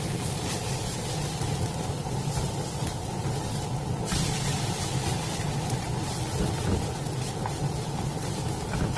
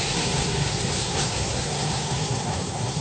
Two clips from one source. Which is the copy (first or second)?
second